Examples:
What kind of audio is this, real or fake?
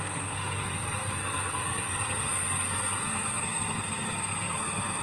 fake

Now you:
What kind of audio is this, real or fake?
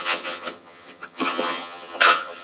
fake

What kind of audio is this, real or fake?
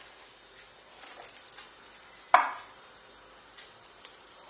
real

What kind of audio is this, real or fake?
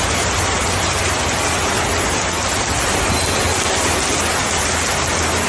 real